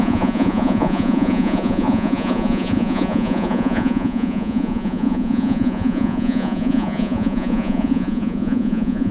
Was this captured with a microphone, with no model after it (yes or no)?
no